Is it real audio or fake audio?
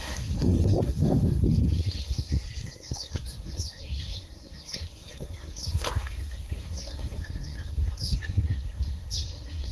fake